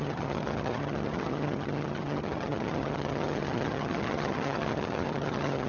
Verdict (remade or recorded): remade